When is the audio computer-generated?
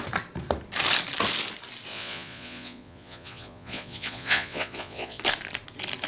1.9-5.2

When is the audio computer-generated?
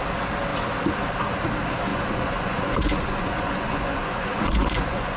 1.9-5.2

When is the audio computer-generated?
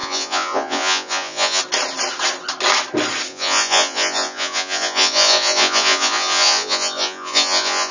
0.0-1.6; 3.3-7.9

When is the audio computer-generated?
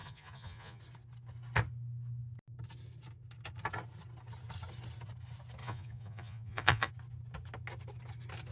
0.0-0.8; 5.6-6.9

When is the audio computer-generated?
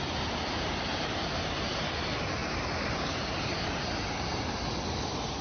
none